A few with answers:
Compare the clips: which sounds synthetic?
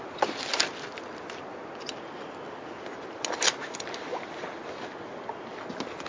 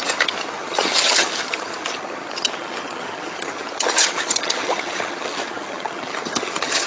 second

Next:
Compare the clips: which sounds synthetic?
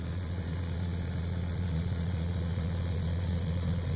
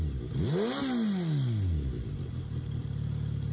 first